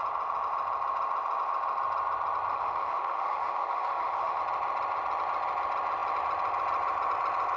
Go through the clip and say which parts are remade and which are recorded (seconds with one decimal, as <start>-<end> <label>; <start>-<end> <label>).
0.0-2.5 recorded; 2.5-4.4 remade; 4.4-7.6 recorded